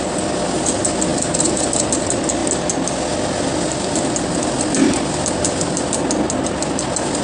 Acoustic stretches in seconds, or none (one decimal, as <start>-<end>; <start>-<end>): 0.0-1.1; 1.9-7.2